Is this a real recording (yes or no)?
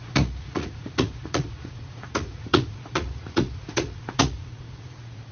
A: no